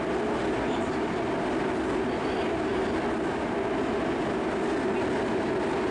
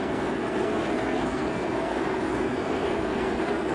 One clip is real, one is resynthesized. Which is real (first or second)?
first